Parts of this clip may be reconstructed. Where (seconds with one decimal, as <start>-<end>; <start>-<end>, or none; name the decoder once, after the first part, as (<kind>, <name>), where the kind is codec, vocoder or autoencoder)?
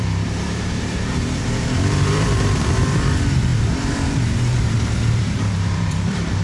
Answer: 0.0-6.4 (vocoder, BigVGAN v2)